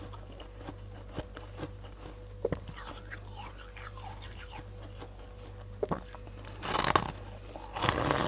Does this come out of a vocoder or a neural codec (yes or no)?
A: no